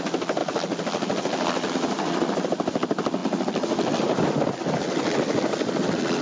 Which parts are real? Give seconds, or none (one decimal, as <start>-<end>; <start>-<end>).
0.0-6.2

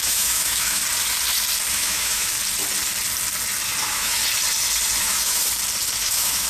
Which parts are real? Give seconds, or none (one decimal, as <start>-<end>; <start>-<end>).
0.8-1.7; 2.3-3.8; 4.2-5.0; 5.4-6.0